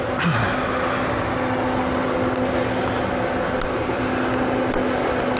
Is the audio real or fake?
real